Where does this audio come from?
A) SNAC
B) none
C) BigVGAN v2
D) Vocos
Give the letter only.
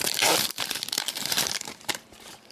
C